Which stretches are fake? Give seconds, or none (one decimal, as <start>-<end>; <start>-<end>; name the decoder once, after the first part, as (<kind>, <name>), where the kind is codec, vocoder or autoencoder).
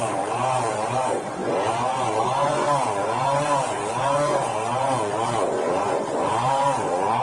0.0-7.2 (vocoder, Vocos)